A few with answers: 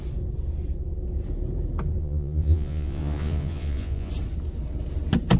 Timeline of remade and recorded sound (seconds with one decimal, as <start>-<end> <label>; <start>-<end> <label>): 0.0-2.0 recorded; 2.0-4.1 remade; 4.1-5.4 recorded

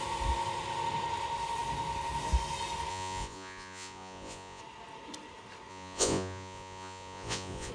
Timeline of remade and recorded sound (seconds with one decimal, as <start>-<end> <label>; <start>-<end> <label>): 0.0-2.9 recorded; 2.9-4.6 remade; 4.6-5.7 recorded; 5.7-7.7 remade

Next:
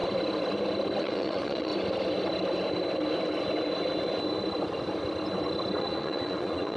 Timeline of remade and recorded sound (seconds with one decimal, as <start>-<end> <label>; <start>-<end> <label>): 0.0-1.0 recorded; 1.0-1.7 remade; 1.7-5.8 recorded; 5.8-6.8 remade